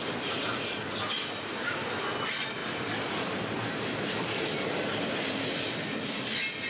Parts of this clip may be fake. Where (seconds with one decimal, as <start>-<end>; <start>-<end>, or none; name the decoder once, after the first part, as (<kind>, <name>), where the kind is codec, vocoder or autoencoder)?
none